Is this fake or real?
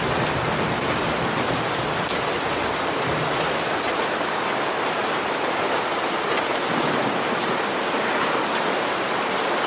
real